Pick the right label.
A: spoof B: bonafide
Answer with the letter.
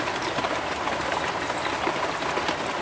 B